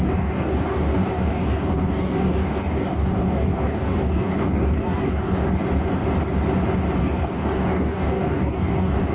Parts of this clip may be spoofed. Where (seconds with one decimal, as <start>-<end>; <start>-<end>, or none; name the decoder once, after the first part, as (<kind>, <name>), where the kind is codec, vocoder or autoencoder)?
0.0-5.6 (codec, DAC); 7.0-9.1